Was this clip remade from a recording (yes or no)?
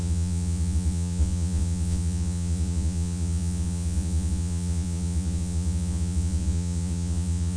yes